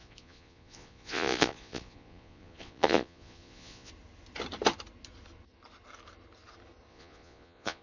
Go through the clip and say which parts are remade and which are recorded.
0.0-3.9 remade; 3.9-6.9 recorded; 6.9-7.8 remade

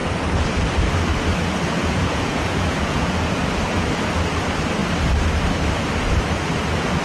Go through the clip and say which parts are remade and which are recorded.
0.0-1.8 recorded; 1.8-3.4 remade; 3.4-7.0 recorded

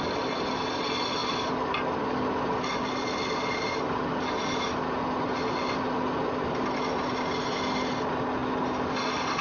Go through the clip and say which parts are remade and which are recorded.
0.0-9.4 recorded

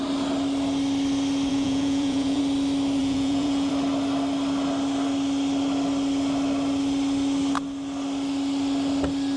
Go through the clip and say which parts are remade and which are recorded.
0.0-1.5 recorded; 1.5-2.4 remade; 2.4-3.0 recorded; 3.0-3.7 remade; 3.7-9.4 recorded

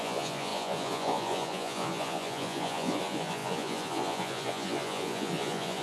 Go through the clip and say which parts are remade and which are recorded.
0.0-5.8 remade

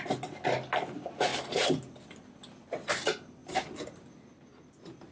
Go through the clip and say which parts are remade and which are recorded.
0.0-5.1 recorded

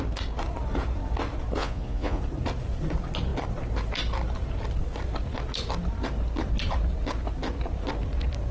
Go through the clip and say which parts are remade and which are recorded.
0.0-1.6 recorded; 1.6-2.2 remade; 2.2-8.5 recorded